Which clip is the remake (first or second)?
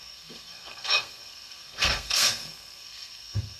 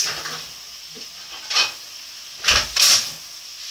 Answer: first